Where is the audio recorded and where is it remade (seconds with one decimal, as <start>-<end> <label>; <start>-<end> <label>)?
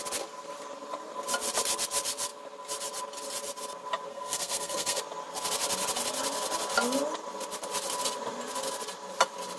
0.0-4.1 recorded; 4.1-5.0 remade; 5.0-9.6 recorded